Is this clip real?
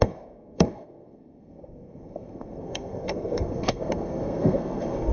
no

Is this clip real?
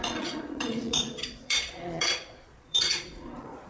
no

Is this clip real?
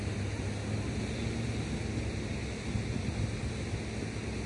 yes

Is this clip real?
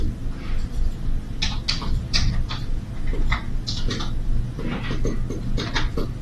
yes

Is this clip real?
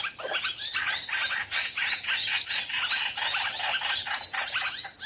yes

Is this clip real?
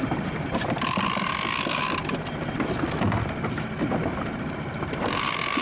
yes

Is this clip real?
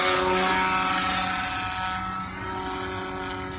yes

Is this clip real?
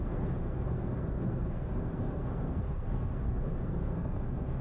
no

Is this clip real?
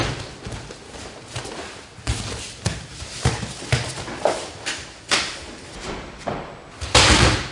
yes